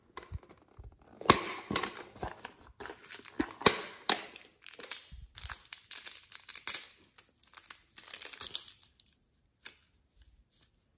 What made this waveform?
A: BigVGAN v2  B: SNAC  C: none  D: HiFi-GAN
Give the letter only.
C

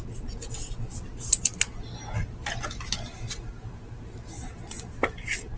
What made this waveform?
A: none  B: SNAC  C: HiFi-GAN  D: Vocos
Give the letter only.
A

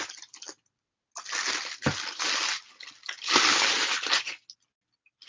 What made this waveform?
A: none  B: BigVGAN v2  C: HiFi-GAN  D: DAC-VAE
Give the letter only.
A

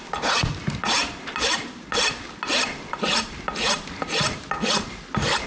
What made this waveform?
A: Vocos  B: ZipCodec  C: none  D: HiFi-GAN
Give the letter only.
C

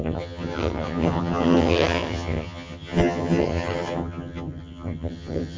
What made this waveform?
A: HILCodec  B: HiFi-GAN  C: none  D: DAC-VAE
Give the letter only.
B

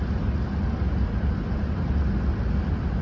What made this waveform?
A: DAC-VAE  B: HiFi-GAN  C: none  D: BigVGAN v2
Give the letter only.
C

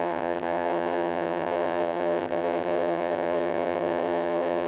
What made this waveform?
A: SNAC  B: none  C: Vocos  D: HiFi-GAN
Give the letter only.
D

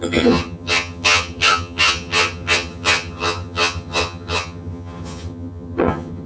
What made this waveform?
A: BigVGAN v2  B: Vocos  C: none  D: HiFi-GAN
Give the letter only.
D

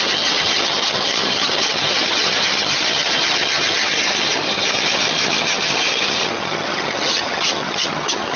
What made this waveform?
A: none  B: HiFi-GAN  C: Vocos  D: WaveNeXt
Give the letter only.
B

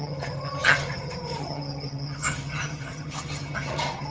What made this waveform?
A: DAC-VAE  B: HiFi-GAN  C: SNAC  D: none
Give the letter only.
B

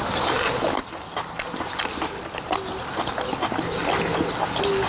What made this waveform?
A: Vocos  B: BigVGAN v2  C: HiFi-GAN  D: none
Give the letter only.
D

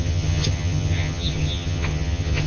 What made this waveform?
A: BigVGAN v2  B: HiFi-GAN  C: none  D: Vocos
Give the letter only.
B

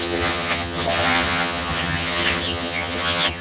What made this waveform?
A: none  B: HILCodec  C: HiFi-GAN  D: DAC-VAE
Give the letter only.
C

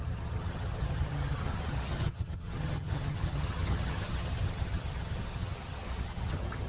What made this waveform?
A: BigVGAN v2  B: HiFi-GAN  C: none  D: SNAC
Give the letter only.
B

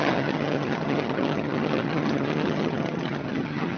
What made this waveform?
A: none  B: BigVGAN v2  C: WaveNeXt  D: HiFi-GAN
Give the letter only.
D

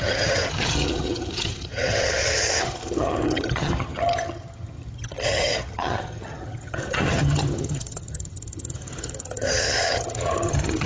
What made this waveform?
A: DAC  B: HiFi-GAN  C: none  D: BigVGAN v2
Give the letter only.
B